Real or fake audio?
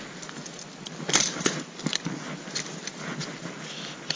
real